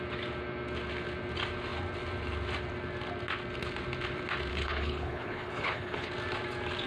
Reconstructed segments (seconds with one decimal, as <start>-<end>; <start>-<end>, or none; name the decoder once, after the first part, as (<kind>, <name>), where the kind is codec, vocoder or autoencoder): 4.5-6.1 (codec, HILCodec)